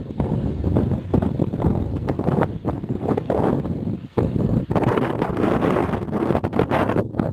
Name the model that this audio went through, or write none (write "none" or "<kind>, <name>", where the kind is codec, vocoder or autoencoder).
codec, SNAC